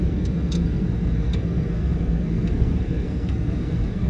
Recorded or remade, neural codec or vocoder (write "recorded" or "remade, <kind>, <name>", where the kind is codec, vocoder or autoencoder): remade, codec, SNAC